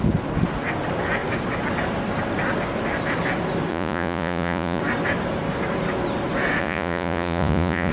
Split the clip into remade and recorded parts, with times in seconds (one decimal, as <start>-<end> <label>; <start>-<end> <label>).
0.0-3.7 recorded; 3.7-4.8 remade; 4.8-6.6 recorded; 6.6-7.9 remade